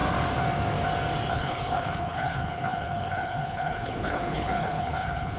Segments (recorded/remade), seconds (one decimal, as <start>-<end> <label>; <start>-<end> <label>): 0.0-1.3 recorded; 1.3-5.4 remade